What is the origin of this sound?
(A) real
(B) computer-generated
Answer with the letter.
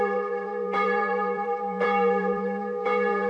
B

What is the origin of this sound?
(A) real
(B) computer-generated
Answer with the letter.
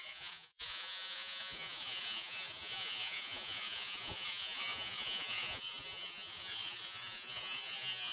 B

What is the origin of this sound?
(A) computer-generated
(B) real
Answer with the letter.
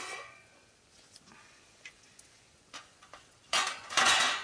A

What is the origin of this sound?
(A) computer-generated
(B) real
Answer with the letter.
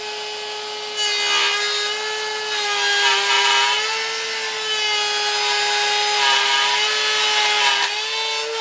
B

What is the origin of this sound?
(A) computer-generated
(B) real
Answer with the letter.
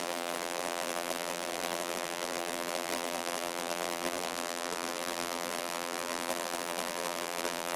A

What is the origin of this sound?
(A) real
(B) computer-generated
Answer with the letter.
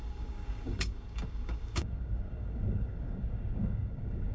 B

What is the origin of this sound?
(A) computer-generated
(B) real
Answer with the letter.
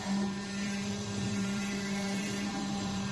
A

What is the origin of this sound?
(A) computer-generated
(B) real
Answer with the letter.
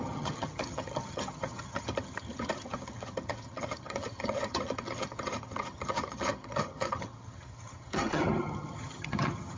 A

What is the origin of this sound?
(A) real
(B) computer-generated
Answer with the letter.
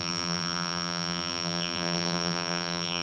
B